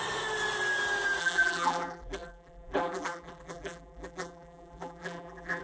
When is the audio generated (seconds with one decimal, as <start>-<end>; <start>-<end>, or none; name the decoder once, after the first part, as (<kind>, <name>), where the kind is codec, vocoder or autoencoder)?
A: 1.2-5.6 (vocoder, BigVGAN v2)